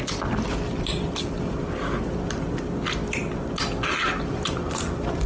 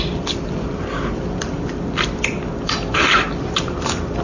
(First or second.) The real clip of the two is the first